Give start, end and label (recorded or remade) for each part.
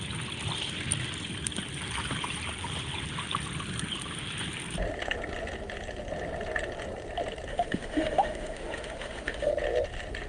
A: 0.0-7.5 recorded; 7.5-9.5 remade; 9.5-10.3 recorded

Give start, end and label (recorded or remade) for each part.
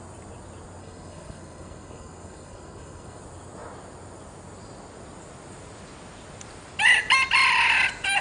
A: 0.0-0.8 recorded; 0.8-3.2 remade; 3.2-8.2 recorded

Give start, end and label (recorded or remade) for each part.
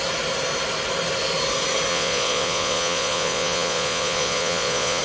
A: 0.0-1.9 recorded; 1.9-5.0 remade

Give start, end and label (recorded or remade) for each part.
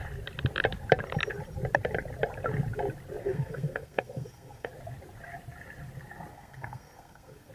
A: 0.0-3.2 recorded; 3.2-4.7 remade; 4.7-6.3 recorded; 6.3-7.5 remade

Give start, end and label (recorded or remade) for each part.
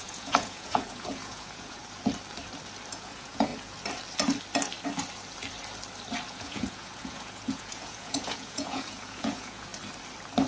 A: 0.0-1.8 remade; 1.8-2.9 recorded; 2.9-3.5 remade; 3.5-6.3 recorded; 6.3-9.7 remade; 9.7-10.5 recorded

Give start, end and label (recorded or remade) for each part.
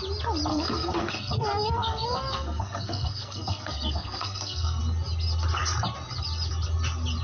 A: 0.0-0.5 recorded; 0.5-4.8 remade; 4.8-7.2 recorded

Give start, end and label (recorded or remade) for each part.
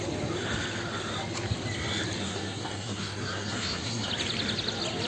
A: 0.0-2.2 recorded; 2.2-4.1 remade; 4.1-5.1 recorded